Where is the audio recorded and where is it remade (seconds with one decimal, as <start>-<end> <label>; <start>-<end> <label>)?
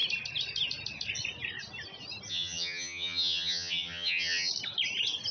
0.0-2.3 recorded; 2.3-4.5 remade; 4.5-5.3 recorded